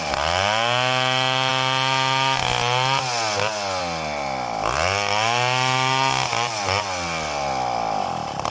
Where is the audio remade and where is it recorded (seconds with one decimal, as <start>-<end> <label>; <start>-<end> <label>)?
0.0-8.5 recorded